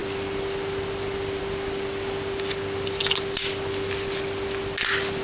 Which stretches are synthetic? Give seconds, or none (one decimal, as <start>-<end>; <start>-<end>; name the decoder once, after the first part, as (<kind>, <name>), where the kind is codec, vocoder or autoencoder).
none